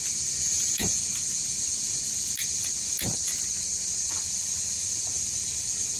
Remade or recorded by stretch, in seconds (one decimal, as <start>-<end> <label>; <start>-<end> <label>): 0.0-3.3 remade; 3.3-4.1 recorded; 4.1-6.0 remade